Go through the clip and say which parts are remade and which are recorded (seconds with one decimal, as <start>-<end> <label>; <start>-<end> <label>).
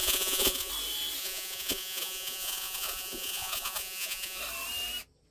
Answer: 0.0-0.7 remade; 0.7-1.2 recorded; 1.2-4.4 remade; 4.4-5.3 recorded